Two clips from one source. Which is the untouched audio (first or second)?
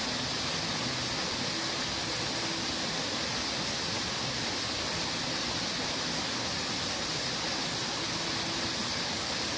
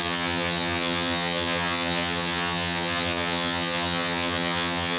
first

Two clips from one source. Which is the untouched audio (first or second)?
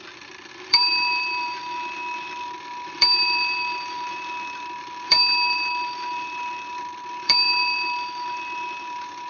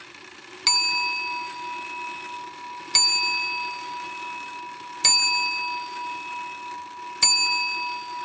second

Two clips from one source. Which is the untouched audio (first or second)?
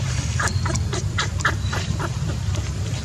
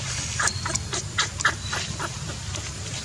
second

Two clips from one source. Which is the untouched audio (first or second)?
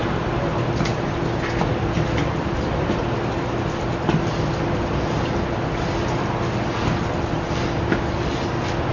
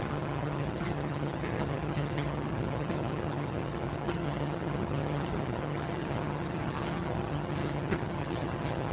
first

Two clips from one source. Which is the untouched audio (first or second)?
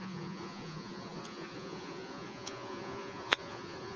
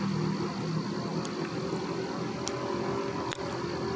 second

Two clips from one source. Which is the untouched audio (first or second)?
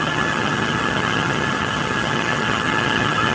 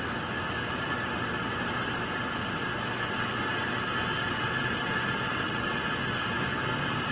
second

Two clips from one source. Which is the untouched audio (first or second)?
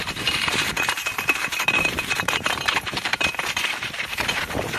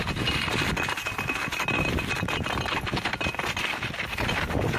second